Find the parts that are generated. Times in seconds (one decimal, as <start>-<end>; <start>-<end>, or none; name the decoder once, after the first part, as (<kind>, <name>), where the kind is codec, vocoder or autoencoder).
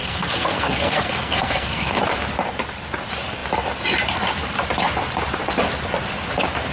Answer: 0.0-2.0 (codec, SNAC)